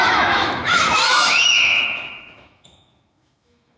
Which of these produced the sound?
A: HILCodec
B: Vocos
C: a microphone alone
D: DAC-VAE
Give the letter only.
D